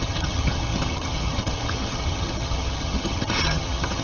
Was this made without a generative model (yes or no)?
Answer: no